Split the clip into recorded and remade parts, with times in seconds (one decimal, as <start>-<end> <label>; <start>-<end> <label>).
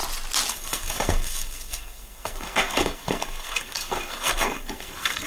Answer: 0.0-0.5 recorded; 0.5-5.3 remade